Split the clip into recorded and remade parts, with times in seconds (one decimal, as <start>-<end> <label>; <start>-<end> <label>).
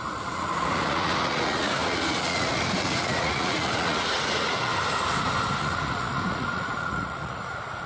0.0-4.7 remade; 4.7-5.6 recorded; 5.6-7.9 remade